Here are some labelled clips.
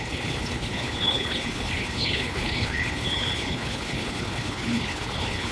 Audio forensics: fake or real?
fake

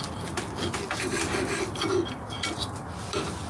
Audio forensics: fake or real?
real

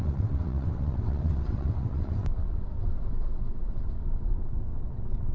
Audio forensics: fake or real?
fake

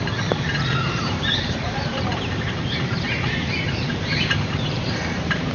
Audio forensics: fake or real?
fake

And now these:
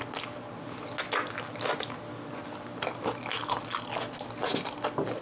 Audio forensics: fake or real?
real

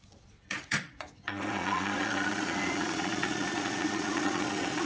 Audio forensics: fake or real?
fake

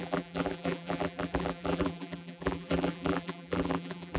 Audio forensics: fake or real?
fake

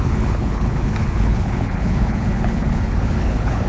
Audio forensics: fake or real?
fake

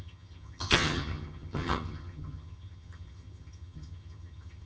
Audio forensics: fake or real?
fake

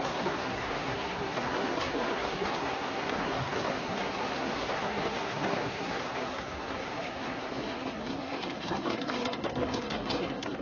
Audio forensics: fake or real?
fake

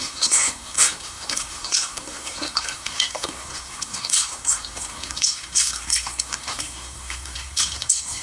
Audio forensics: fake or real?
fake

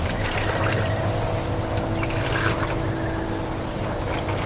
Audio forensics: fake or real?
real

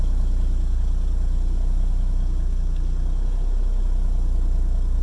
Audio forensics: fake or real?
real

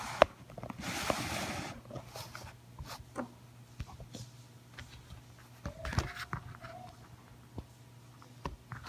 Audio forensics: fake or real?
real